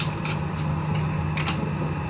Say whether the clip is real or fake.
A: real